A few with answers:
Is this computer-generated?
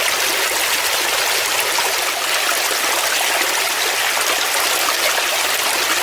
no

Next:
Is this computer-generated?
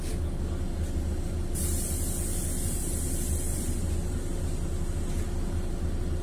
no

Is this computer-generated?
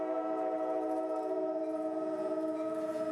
yes